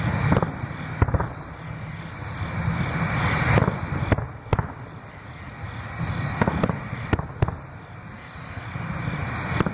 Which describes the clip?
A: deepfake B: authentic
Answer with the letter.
B